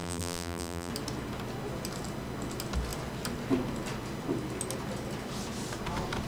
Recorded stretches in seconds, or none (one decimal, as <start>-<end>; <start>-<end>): 0.9-6.3